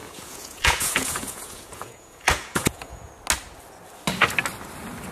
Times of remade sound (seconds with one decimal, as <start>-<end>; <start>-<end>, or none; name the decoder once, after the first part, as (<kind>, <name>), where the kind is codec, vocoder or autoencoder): 0.0-3.1 (vocoder, Vocos)